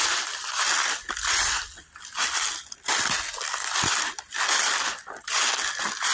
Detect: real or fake real